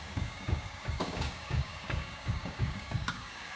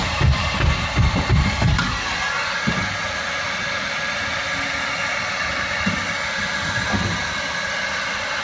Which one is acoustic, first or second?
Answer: second